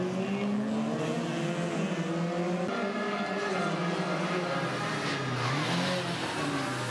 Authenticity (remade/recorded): recorded